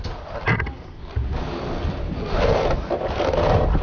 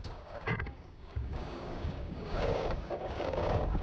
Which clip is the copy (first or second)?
second